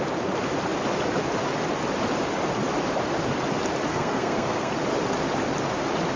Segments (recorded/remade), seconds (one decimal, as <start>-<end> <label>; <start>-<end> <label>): 0.0-3.9 recorded; 3.9-4.7 remade; 4.7-6.2 recorded